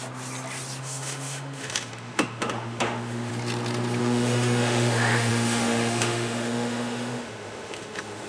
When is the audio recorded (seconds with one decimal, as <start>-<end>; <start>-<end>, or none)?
0.0-0.8; 3.3-4.0